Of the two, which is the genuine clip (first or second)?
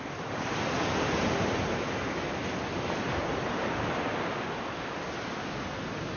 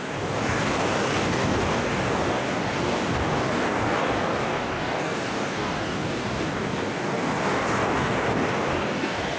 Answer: first